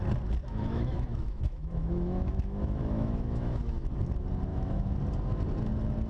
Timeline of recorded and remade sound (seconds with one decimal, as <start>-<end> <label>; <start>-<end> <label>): 0.0-0.4 recorded; 0.4-3.9 remade; 3.9-4.5 recorded; 4.5-5.0 remade; 5.0-6.1 recorded